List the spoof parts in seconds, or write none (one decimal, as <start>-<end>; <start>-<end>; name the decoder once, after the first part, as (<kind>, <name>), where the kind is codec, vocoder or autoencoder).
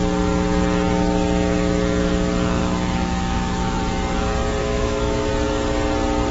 2.6-3.8 (autoencoder, DAC-VAE); 4.6-5.3